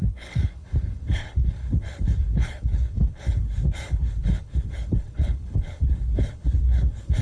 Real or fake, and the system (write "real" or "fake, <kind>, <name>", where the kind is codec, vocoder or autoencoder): fake, codec, HILCodec